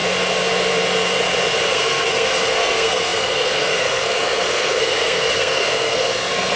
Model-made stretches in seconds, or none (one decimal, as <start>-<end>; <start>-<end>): 1.7-6.6